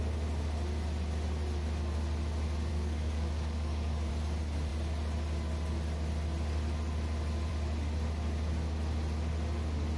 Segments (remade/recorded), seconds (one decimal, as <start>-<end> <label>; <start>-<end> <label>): 0.0-2.7 recorded; 2.7-4.1 remade; 4.1-10.0 recorded